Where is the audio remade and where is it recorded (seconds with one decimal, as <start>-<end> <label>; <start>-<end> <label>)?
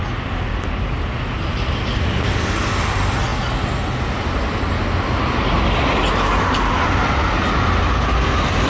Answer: 0.0-8.7 recorded